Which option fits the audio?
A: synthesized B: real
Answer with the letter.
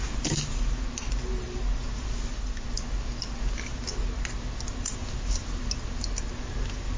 B